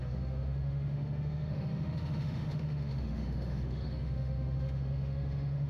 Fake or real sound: fake